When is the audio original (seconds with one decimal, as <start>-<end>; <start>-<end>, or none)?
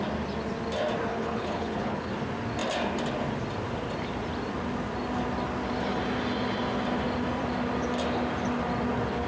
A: 0.0-1.1; 2.1-9.3